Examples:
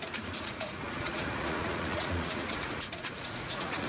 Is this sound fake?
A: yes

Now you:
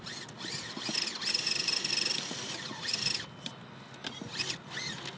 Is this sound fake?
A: no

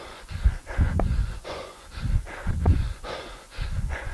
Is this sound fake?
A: yes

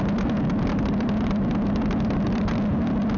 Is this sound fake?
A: no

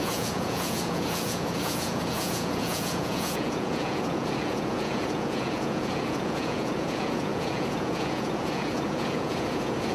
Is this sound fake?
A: yes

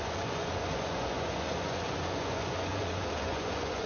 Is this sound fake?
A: yes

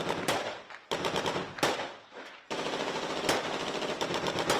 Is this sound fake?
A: no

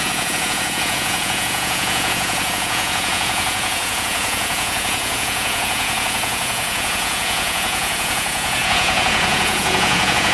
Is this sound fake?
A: yes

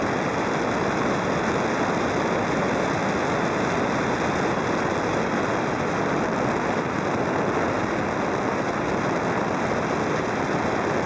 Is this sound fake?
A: no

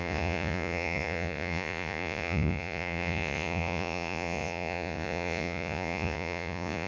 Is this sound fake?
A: yes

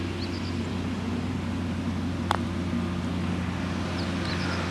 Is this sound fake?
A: no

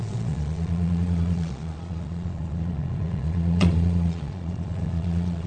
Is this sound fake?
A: yes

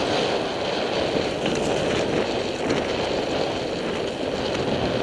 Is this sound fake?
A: no